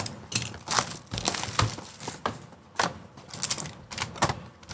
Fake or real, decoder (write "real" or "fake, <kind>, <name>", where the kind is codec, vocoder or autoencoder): real